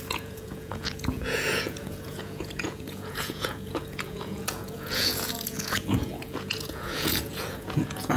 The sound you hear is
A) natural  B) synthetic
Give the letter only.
B